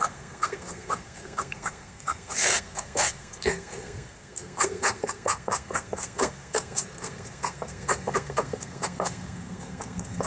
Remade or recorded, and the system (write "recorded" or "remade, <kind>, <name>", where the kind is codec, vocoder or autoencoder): remade, codec, SNAC